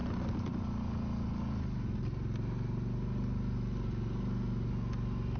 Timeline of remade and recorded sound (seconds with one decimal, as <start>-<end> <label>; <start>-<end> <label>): 0.0-5.4 recorded